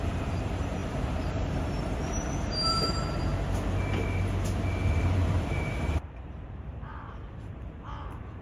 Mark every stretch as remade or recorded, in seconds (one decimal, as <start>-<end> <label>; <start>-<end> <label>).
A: 0.0-3.3 remade; 3.3-5.0 recorded; 5.0-8.4 remade